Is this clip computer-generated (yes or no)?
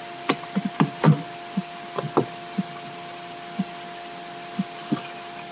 no